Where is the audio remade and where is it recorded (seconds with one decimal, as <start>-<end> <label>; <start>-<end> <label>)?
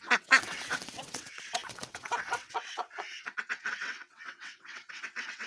0.0-5.5 remade